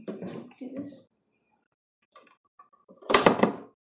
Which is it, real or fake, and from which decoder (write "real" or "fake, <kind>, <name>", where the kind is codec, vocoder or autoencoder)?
fake, vocoder, BigVGAN v2